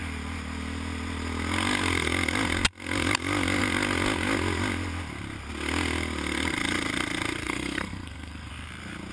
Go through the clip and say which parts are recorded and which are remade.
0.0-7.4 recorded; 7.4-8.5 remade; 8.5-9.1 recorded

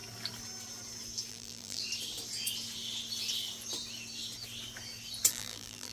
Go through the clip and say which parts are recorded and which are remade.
0.0-1.3 recorded; 1.3-1.8 remade; 1.8-5.3 recorded; 5.3-5.9 remade